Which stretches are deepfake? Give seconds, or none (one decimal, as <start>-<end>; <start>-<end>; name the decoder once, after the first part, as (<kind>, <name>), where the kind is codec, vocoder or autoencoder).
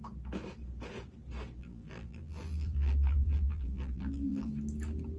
1.6-4.5 (vocoder, BigVGAN v2)